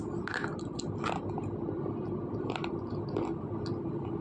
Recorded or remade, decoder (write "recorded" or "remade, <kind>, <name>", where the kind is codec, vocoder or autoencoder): recorded